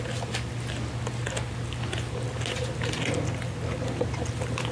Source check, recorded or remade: recorded